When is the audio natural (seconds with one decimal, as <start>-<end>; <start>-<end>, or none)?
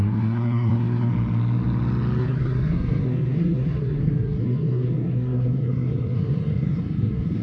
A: 1.1-2.2